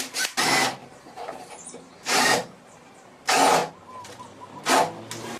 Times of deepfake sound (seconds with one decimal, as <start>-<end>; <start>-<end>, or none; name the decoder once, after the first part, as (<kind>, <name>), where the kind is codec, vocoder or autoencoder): 0.8-2.9 (vocoder, BigVGAN v2)